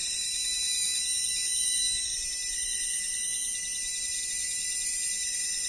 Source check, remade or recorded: recorded